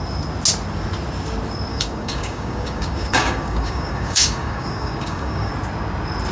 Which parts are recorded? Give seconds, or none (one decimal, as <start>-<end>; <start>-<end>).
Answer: 0.0-1.7; 5.5-6.3